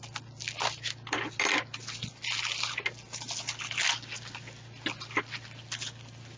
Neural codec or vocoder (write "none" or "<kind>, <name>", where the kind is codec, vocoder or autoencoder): none